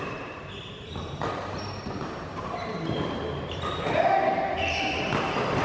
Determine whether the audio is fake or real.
fake